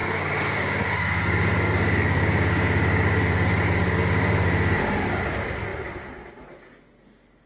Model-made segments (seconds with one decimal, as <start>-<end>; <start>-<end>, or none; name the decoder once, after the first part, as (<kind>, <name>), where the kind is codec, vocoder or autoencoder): 0.0-4.5 (codec, DAC)